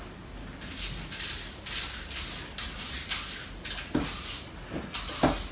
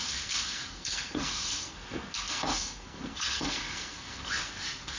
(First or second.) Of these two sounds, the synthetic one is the second